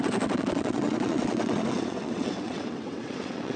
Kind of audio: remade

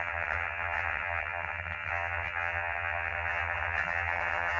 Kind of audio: remade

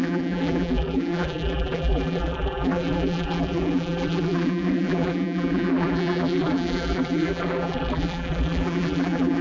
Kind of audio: remade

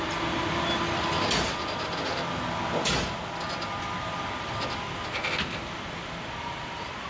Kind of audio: recorded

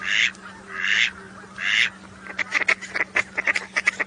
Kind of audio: recorded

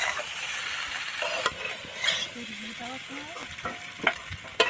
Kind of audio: recorded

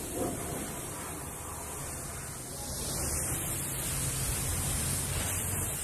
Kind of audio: recorded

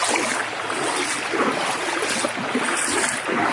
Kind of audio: recorded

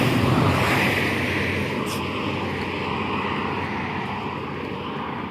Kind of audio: recorded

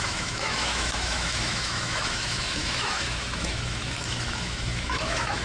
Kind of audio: remade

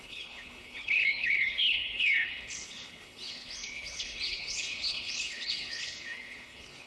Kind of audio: remade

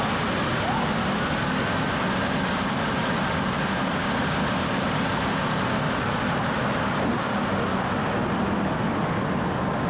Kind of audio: recorded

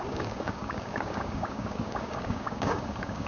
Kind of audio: remade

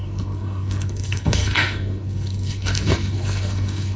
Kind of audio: remade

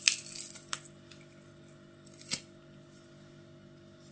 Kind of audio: recorded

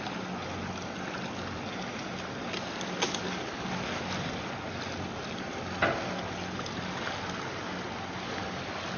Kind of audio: recorded